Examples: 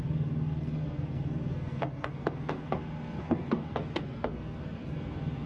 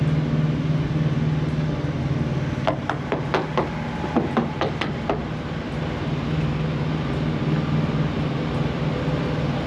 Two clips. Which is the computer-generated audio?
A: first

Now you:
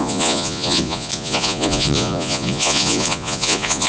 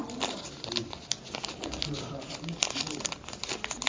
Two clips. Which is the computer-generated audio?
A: first